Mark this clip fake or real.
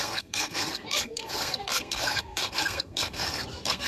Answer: fake